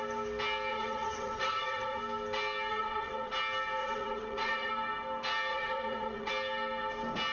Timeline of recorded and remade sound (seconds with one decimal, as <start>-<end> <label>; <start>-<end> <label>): 0.0-0.7 recorded; 0.7-2.0 remade; 2.0-2.7 recorded; 2.7-3.3 remade; 3.3-3.8 recorded; 3.8-4.7 remade; 4.7-5.5 recorded; 5.5-6.3 remade; 6.3-7.3 recorded